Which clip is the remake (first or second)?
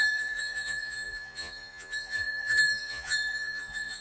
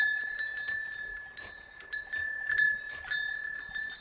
first